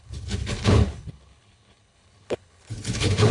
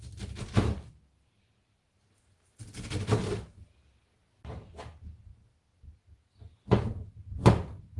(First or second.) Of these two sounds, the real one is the second